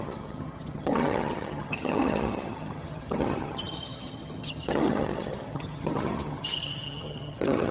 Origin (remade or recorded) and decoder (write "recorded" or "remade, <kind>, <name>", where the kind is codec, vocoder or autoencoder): remade, vocoder, HiFi-GAN